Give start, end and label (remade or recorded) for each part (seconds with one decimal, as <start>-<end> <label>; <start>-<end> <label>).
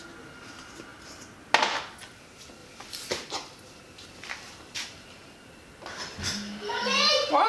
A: 0.0-0.9 recorded; 0.9-1.5 remade; 1.5-2.6 recorded; 2.6-7.1 remade; 7.1-7.5 recorded